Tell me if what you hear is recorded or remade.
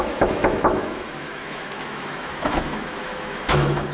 remade